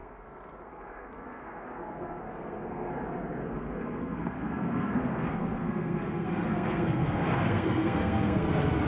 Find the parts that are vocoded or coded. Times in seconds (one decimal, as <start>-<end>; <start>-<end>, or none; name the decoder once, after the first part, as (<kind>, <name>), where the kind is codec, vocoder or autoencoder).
0.0-2.9 (codec, SNAC); 3.4-8.5